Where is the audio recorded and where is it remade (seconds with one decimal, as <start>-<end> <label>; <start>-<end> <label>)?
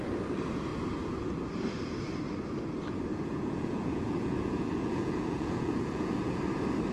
0.0-3.1 recorded; 3.1-6.5 remade; 6.5-6.9 recorded